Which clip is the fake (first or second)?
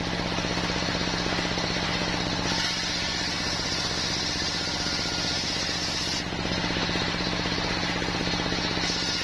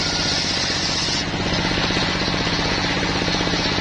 second